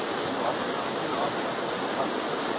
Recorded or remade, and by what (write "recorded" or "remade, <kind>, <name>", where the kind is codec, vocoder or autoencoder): recorded